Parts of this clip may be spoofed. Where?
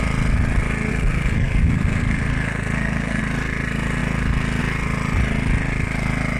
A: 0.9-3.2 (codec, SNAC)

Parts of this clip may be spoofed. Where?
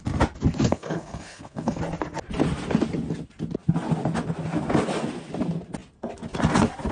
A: 0.7-1.8 (codec, SNAC)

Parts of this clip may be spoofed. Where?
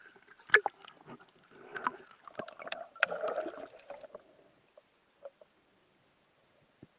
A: none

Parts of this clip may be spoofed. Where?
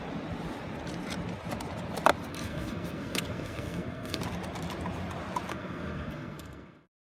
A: 2.3-4.2 (codec, SNAC); 5.5-7.0